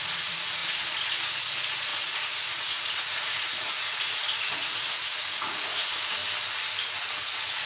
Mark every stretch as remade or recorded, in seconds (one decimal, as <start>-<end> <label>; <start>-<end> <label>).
0.0-6.2 remade; 6.2-6.8 recorded; 6.8-7.7 remade

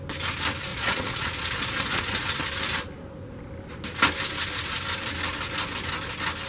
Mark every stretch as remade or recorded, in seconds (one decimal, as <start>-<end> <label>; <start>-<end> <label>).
0.0-0.7 recorded; 0.7-2.2 remade; 2.2-6.5 recorded

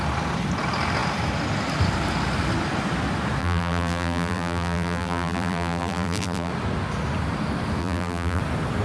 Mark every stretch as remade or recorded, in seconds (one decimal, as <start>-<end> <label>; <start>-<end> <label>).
0.0-3.4 recorded; 3.4-6.5 remade; 6.5-7.8 recorded; 7.8-8.4 remade; 8.4-8.8 recorded

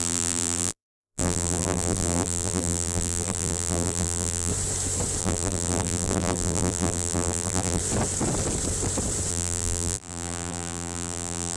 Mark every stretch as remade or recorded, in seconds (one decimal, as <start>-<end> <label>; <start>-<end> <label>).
0.0-4.5 remade; 4.5-5.2 recorded; 5.2-7.8 remade; 7.8-9.3 recorded; 9.3-11.6 remade

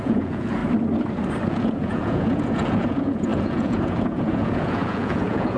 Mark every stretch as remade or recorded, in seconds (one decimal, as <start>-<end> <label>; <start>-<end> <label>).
0.0-0.6 remade; 0.6-1.5 recorded; 1.5-5.6 remade